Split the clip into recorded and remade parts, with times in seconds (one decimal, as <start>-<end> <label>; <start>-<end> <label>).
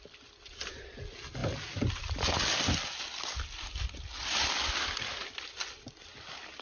0.0-6.6 recorded